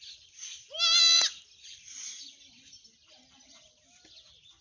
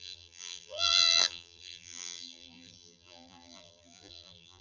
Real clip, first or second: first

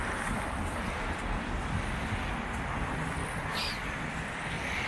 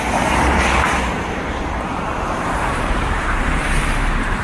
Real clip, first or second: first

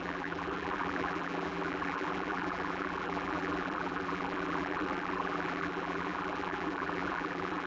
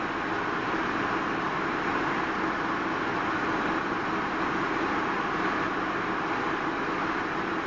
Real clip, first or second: second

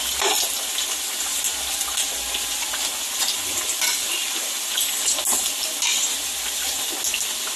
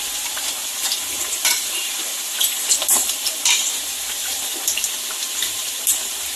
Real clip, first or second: first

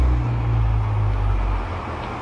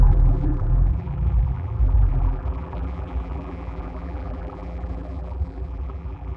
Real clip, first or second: first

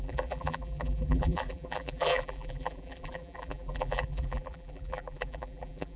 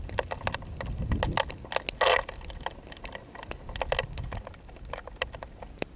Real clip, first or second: second